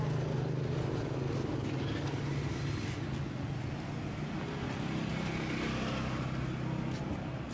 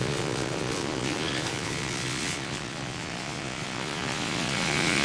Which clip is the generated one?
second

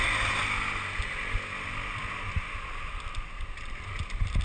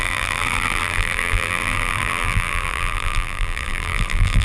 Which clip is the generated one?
second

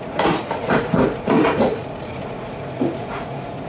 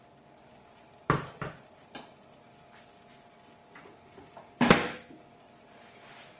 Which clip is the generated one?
first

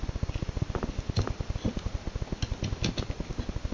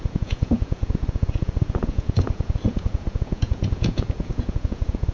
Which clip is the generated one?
second